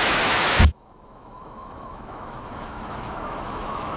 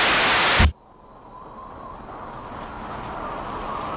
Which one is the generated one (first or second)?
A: first